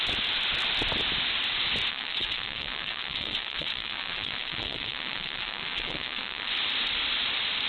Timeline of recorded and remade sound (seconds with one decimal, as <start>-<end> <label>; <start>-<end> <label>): 0.0-1.9 recorded; 1.9-6.5 remade; 6.5-7.7 recorded

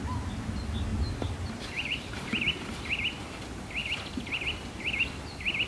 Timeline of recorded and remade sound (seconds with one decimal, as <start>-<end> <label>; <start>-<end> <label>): 0.0-0.9 recorded; 0.9-3.4 remade; 3.4-3.8 recorded; 3.8-5.1 remade; 5.1-5.7 recorded

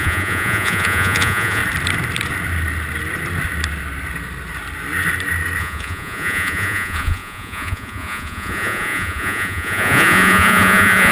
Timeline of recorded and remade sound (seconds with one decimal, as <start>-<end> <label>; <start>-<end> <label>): 0.0-1.6 remade; 1.6-5.6 recorded; 5.6-11.1 remade